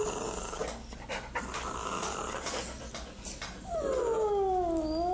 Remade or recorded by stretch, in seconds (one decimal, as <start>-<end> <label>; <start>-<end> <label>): 0.0-5.1 recorded